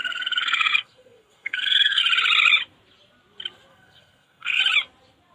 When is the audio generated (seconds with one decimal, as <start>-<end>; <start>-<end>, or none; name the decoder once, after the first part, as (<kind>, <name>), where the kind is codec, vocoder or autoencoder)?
0.0-2.0 (codec, SNAC); 3.7-4.6